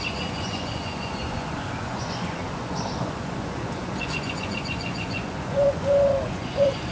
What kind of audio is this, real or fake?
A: fake